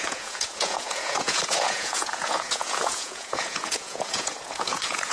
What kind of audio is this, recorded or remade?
remade